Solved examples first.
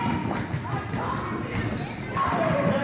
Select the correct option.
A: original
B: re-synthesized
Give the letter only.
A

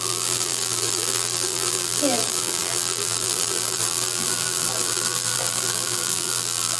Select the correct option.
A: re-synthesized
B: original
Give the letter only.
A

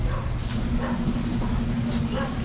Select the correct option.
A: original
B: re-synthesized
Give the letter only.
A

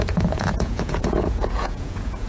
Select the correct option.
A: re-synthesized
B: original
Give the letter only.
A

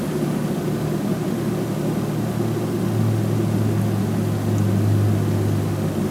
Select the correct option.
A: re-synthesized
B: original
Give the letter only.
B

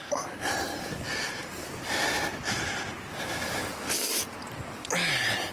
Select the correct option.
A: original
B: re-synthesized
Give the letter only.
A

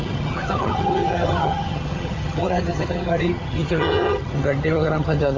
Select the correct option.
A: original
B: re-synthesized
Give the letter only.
B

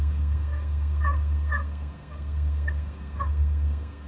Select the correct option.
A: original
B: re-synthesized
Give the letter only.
B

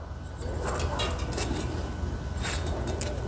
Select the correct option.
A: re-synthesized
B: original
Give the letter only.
B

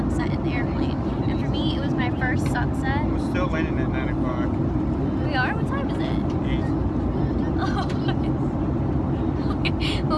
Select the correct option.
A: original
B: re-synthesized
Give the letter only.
A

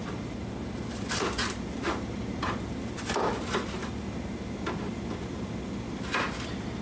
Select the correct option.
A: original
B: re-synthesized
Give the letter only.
A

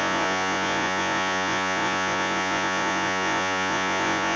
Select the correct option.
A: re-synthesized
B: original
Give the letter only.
A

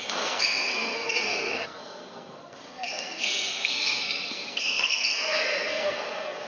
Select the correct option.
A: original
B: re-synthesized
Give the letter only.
B